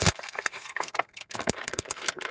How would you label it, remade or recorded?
remade